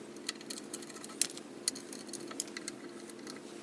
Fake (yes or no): no